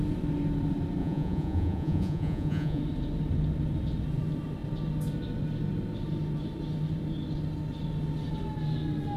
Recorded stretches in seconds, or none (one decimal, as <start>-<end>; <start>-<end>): 0.0-1.0; 2.8-9.2